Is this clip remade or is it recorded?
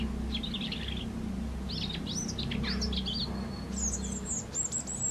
recorded